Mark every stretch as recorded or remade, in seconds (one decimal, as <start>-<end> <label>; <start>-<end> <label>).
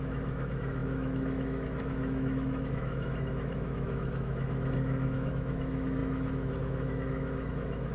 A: 0.0-7.9 remade